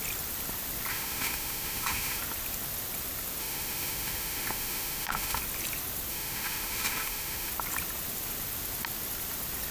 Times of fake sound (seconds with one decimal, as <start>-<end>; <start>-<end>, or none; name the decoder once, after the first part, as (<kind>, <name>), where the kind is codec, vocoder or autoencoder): 0.9-2.2 (autoencoder, DAC-VAE); 3.4-5.4; 6.1-7.5